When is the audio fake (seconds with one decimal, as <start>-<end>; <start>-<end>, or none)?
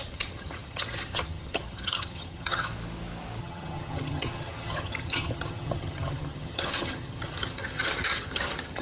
0.0-2.7; 3.4-8.8